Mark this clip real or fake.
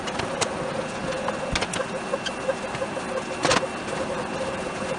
real